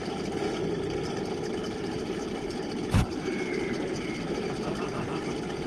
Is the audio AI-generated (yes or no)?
yes